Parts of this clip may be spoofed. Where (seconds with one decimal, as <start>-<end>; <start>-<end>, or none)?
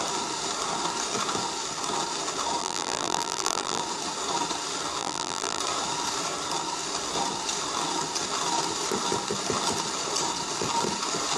2.6-3.8; 5.0-5.6